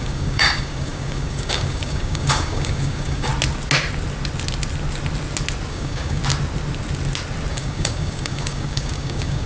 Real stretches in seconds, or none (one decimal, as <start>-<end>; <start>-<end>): 3.3-5.7; 6.2-7.5